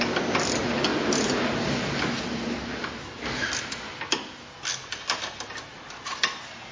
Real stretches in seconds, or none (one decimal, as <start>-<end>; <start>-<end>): 0.0-6.7